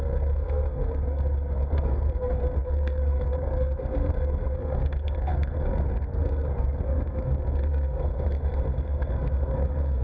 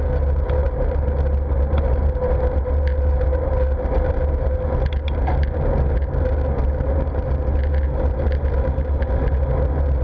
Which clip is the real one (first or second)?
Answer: second